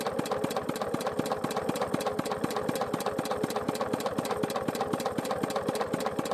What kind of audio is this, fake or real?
real